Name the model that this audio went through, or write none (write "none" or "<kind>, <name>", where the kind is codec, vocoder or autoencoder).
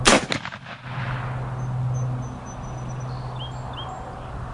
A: none